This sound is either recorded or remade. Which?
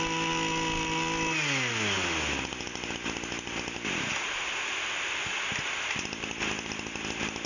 recorded